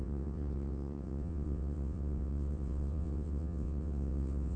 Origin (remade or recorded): remade